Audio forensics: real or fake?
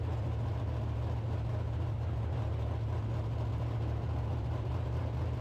real